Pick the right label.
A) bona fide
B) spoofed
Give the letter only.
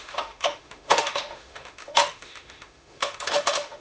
B